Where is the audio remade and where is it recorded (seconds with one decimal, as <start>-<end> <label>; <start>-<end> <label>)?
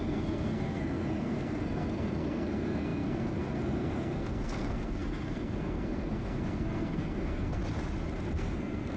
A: 0.0-7.6 remade; 7.6-8.3 recorded; 8.3-9.0 remade